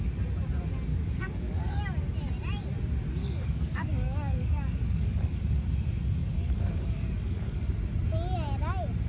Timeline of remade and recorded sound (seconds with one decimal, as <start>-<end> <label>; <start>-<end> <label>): 0.0-0.9 recorded; 0.9-1.8 remade; 1.8-3.2 recorded; 3.2-5.4 remade; 5.4-6.2 recorded; 6.2-7.8 remade; 7.8-9.1 recorded